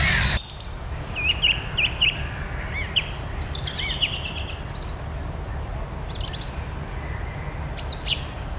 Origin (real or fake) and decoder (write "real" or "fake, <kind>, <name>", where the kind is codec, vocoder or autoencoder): real